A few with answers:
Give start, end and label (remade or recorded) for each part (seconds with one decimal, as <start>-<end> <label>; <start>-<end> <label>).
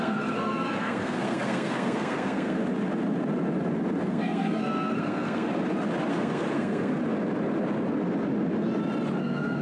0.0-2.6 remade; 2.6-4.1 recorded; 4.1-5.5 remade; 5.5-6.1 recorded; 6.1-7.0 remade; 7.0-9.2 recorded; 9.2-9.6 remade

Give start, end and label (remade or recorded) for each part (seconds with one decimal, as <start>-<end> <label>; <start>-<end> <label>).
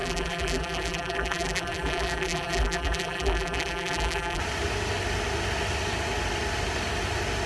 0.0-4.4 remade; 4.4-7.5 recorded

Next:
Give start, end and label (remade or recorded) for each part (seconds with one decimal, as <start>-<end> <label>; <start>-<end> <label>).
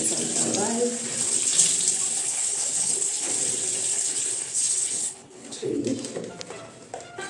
0.0-2.2 recorded; 2.2-3.3 remade; 3.3-3.9 recorded; 3.9-5.8 remade; 5.8-7.3 recorded